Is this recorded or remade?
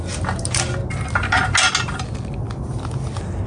recorded